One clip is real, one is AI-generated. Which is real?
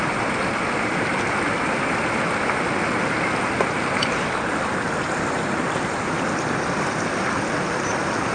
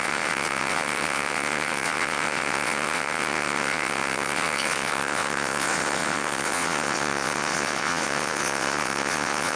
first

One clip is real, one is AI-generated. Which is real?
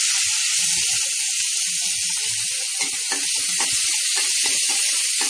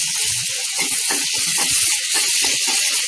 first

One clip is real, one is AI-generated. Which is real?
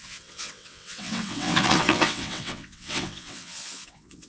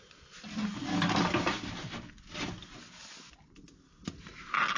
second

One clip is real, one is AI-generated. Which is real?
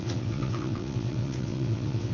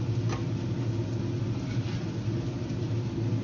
second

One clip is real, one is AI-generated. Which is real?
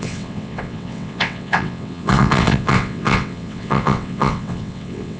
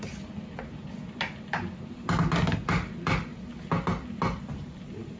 second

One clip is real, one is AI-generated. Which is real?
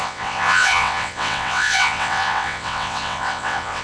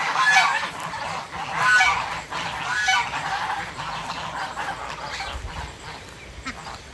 second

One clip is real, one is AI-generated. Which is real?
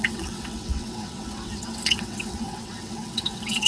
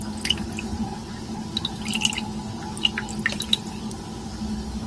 second